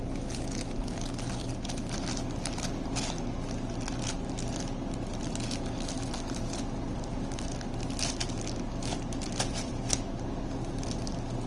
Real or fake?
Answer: real